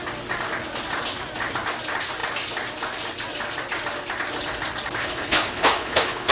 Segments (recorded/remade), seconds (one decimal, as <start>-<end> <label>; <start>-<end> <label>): 0.0-5.0 recorded; 5.0-6.3 remade